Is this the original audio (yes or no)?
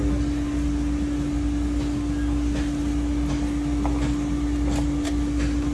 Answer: yes